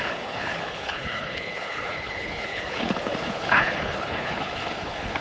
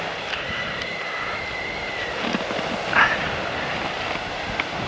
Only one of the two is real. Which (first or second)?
second